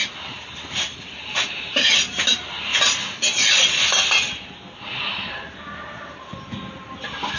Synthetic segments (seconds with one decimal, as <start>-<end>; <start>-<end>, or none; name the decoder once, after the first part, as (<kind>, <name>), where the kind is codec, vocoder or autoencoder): none